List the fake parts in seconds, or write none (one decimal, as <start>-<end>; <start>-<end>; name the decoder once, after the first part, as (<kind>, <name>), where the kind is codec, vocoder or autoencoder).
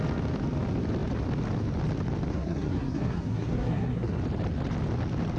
2.3-4.2 (codec, SNAC)